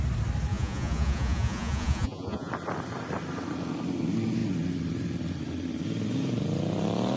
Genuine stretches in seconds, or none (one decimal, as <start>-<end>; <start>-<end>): 0.0-0.5; 2.5-7.2